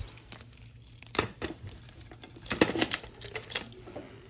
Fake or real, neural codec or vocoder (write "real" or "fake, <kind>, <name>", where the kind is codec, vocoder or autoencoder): real